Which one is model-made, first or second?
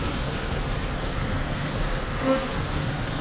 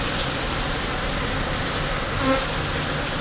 first